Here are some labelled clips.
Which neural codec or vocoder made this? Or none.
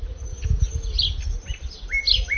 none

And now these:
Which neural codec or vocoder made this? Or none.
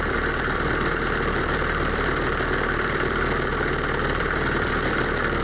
vocoder, BigVGAN v2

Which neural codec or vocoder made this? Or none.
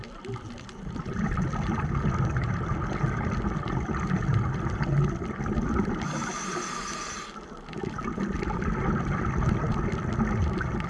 none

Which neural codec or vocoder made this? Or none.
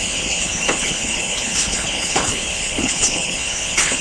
codec, HILCodec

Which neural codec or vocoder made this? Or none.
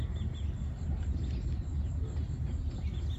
none